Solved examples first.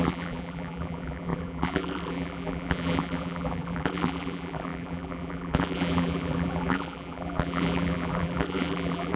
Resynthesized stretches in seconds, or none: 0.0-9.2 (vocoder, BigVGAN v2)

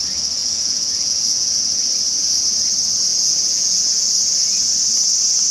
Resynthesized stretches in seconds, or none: 0.4-1.6 (vocoder, Vocos); 3.1-4.1